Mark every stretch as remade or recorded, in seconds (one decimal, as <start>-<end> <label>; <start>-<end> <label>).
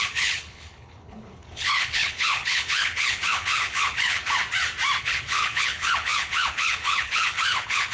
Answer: 0.0-4.4 remade; 4.4-5.0 recorded; 5.0-7.9 remade